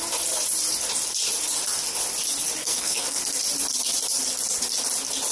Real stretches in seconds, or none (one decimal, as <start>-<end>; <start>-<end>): 0.0-2.6; 3.2-5.3